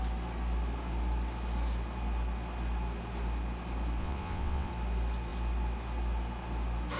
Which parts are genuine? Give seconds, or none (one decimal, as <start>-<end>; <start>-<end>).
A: 0.0-4.0; 4.7-7.0

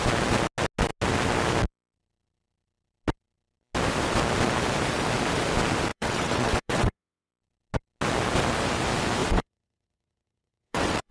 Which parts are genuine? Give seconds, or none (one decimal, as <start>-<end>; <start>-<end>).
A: 0.0-5.9; 7.3-9.2

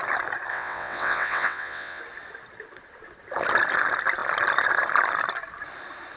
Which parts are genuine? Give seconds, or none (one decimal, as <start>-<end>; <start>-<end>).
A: 0.0-0.5; 2.0-6.2

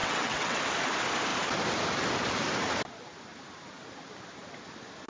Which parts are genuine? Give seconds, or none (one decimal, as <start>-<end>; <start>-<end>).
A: 0.6-5.1